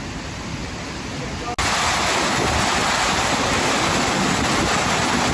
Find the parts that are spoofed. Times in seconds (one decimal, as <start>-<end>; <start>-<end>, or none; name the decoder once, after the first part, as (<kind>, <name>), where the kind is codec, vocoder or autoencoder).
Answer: 0.6-1.2 (vocoder, BigVGAN v2); 2.8-4.2